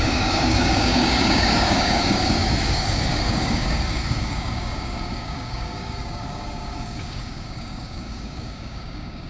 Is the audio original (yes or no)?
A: no